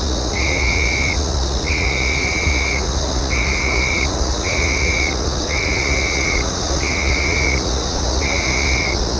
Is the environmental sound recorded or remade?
remade